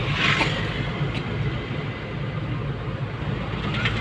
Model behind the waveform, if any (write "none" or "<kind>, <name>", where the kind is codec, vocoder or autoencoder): none